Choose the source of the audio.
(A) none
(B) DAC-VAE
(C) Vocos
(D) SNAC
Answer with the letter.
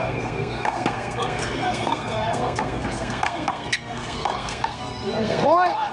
D